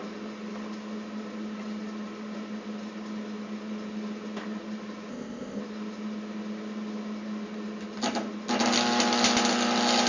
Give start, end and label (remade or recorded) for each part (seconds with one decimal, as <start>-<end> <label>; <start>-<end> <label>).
0.0-5.1 recorded; 5.1-5.6 remade; 5.6-10.1 recorded